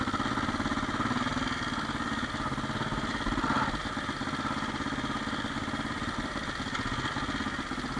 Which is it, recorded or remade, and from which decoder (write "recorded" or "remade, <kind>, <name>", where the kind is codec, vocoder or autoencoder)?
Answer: recorded